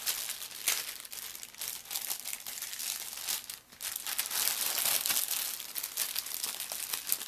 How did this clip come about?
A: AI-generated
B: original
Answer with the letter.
B